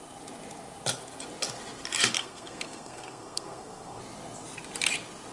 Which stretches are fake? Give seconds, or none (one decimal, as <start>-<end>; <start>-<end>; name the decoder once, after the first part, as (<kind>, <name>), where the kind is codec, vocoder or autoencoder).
2.1-4.0 (codec, SNAC)